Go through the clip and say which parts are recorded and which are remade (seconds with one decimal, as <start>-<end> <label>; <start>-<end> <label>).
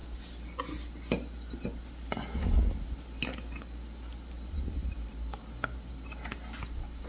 0.0-7.1 recorded